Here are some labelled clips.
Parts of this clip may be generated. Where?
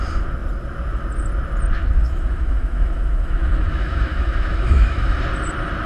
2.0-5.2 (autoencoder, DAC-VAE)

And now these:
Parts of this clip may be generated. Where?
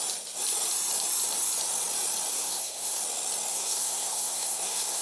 2.3-3.0 (codec, SNAC); 3.5-5.0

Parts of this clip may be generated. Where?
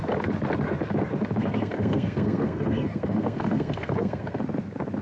1.4-4.4 (codec, SNAC)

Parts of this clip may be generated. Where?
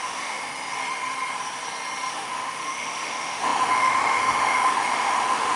0.0-0.5 (autoencoder, DAC-VAE); 2.1-5.6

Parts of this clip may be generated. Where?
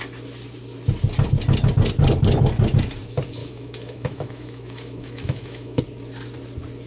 3.4-5.8 (autoencoder, DAC-VAE)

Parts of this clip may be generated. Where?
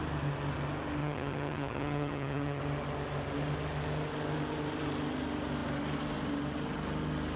1.0-2.6 (vocoder, HiFi-GAN)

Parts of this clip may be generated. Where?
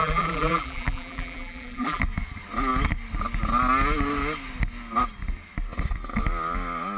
0.0-2.0 (vocoder, BigVGAN v2)